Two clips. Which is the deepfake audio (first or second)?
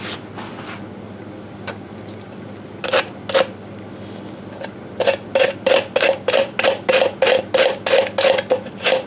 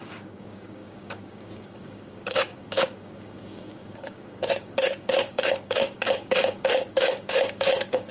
second